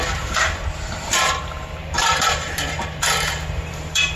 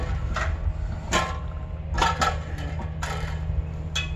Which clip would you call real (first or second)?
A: second